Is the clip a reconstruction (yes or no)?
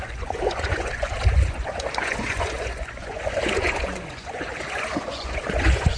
yes